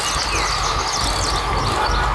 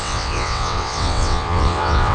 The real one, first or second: first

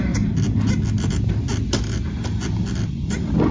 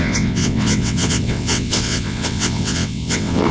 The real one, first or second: first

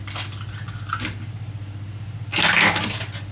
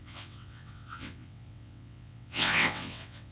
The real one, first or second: first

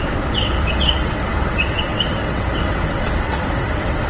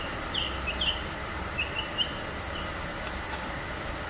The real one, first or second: second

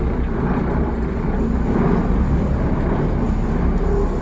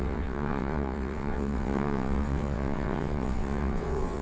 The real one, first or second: first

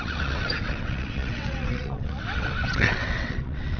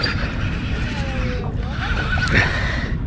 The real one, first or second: second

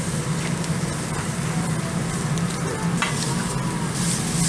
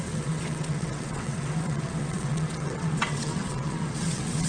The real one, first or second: first